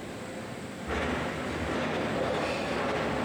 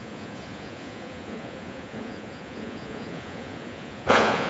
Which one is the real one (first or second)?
first